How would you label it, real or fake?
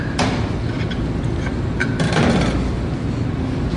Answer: real